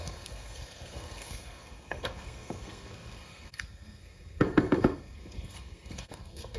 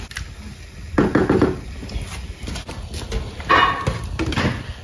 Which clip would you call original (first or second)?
second